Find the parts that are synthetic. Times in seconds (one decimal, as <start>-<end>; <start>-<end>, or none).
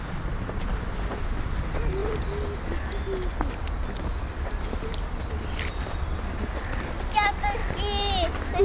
none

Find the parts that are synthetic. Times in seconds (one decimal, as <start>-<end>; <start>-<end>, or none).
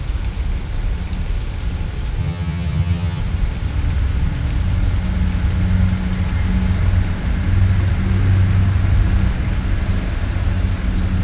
2.2-3.2